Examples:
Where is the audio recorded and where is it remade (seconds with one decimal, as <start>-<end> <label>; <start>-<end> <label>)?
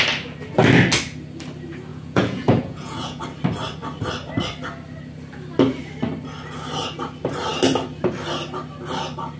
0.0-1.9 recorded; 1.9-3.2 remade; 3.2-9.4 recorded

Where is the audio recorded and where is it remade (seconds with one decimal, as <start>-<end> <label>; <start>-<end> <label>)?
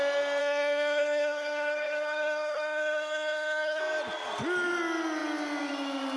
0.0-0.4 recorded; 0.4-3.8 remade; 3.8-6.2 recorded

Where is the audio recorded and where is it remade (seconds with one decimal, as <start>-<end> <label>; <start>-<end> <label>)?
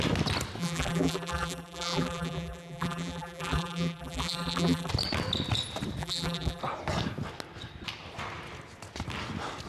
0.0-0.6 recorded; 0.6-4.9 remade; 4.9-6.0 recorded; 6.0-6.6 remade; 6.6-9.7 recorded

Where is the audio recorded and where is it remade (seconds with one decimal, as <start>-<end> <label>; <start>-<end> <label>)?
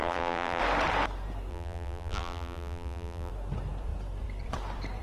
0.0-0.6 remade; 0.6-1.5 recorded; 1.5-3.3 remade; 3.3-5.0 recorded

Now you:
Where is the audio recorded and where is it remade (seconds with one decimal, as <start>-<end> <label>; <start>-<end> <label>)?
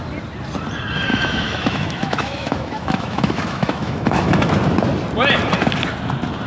0.0-1.1 recorded; 1.1-4.5 remade; 4.5-6.5 recorded